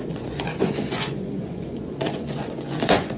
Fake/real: fake